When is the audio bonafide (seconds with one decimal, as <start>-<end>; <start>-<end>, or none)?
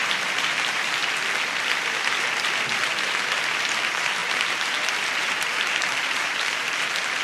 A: 1.0-2.9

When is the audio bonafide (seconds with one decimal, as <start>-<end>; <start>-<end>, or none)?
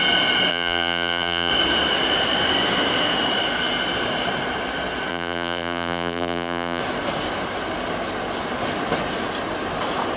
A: 0.0-0.5; 1.5-5.1; 6.8-10.2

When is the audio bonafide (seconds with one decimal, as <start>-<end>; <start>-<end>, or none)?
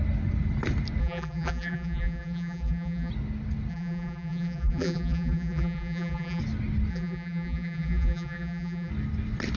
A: 0.0-1.0; 3.1-3.7; 6.4-6.9; 8.9-9.6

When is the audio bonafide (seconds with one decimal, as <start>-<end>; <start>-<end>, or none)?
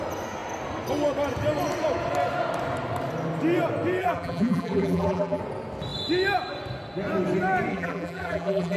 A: 0.0-4.0; 5.4-7.7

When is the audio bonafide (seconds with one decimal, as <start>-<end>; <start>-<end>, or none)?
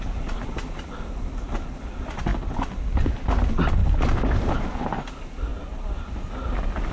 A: 0.0-6.9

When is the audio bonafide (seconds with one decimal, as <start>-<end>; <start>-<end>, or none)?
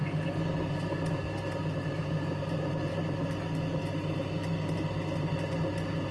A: 0.0-6.1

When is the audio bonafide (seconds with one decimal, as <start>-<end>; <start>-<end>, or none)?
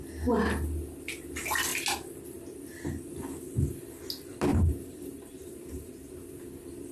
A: 0.0-4.5; 6.1-6.9